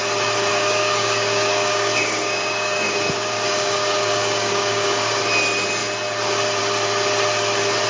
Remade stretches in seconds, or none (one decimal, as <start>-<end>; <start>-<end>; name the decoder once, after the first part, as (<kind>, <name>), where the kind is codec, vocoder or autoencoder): 0.5-5.2 (codec, DAC)